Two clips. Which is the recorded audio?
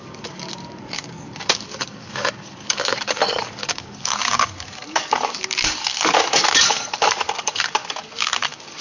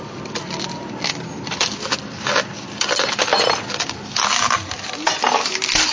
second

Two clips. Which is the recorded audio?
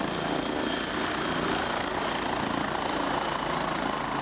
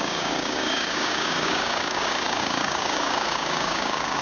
first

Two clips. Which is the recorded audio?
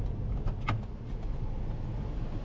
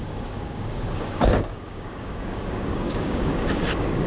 first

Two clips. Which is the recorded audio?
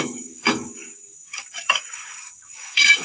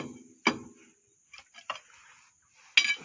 second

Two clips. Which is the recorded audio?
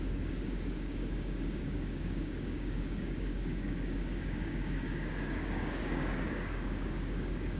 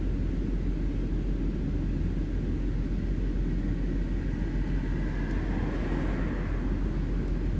second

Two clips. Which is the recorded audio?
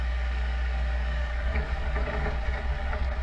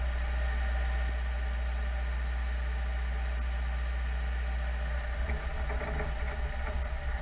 second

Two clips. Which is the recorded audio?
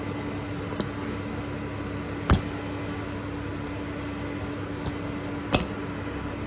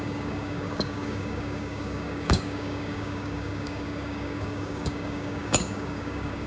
first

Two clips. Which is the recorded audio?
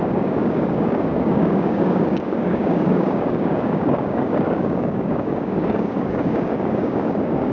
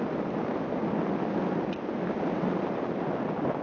second